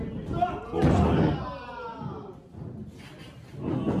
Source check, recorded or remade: recorded